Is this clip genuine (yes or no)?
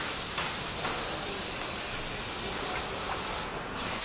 yes